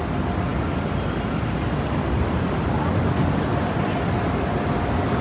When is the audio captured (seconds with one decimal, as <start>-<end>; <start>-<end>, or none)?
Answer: 0.0-5.2